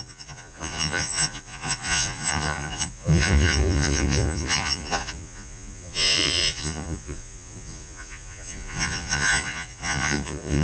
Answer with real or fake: fake